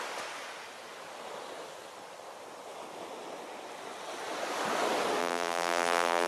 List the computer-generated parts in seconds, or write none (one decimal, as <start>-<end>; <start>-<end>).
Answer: 5.2-6.3